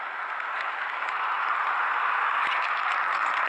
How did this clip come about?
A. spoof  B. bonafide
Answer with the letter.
B